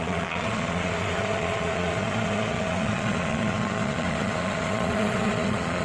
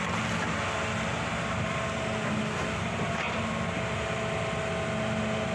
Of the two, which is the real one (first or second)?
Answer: second